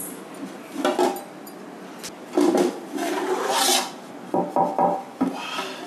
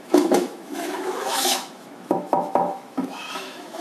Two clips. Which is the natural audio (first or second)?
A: first